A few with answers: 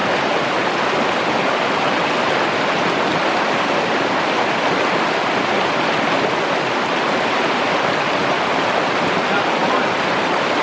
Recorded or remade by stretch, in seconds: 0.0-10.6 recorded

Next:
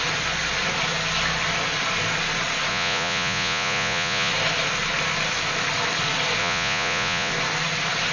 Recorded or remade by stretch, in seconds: 0.0-2.7 recorded; 2.7-4.3 remade; 4.3-6.4 recorded; 6.4-7.3 remade; 7.3-8.1 recorded

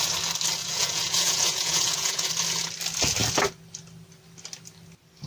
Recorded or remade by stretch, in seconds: 0.0-0.6 recorded; 0.6-2.3 remade; 2.3-5.3 recorded

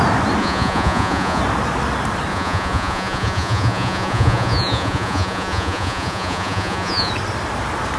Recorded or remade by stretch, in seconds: 0.0-0.4 recorded; 0.4-1.4 remade; 1.4-2.3 recorded; 2.3-7.1 remade; 7.1-8.0 recorded

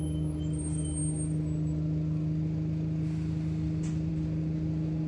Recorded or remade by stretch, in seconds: 0.0-5.1 recorded

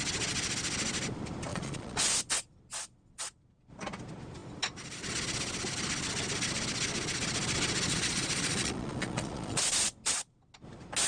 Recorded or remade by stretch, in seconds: 0.0-1.5 recorded; 1.5-2.1 remade; 2.1-7.9 recorded; 7.9-9.7 remade; 9.7-11.1 recorded

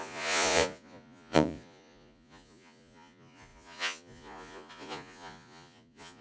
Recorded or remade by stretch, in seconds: 0.0-6.2 remade